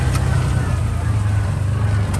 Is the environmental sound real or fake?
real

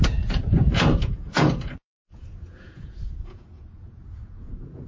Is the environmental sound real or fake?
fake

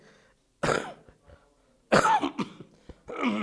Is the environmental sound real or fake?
real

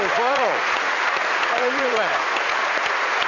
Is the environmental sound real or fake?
fake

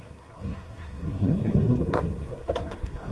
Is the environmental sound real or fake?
fake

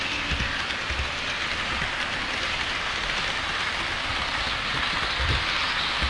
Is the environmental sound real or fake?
real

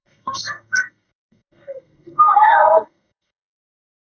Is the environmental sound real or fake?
fake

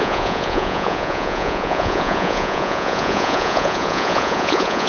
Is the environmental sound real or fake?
fake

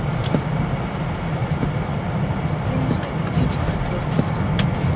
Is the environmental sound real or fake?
real